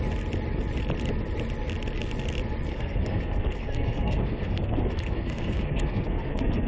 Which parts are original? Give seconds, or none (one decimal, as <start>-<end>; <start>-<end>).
0.0-2.7